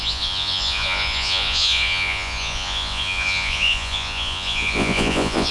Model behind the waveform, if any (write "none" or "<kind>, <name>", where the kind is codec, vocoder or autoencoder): vocoder, Vocos